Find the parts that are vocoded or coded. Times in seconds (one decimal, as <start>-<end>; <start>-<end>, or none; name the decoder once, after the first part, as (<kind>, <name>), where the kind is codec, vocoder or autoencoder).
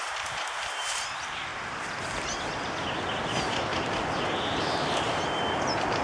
0.0-1.5 (vocoder, BigVGAN v2); 3.2-3.7; 4.6-6.0